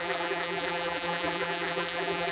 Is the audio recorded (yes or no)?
no